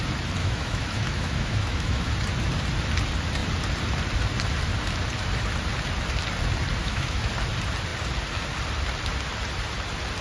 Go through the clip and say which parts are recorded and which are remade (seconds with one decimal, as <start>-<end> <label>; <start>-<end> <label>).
0.0-0.4 recorded; 0.4-2.1 remade; 2.1-6.8 recorded; 6.8-7.3 remade; 7.3-10.2 recorded